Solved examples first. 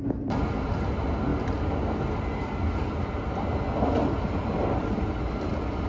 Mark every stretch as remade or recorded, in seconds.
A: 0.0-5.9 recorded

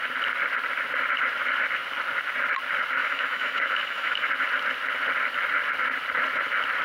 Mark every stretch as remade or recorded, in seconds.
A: 0.0-3.0 recorded; 3.0-4.3 remade; 4.3-6.8 recorded

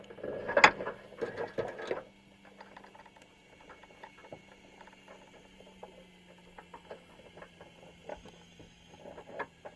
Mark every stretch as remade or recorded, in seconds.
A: 0.0-8.1 recorded; 8.1-9.0 remade; 9.0-9.8 recorded

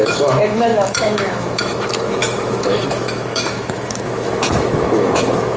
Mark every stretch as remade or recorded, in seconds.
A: 0.0-5.6 remade